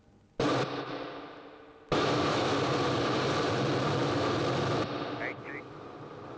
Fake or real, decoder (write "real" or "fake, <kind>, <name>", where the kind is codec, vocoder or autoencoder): real